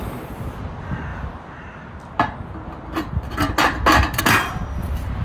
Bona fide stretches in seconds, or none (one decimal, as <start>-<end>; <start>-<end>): 0.0-5.2